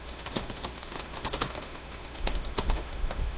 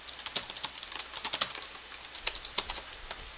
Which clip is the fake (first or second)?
first